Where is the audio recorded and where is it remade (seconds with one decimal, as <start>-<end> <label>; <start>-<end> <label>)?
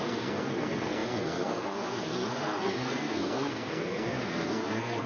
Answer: 0.0-5.1 remade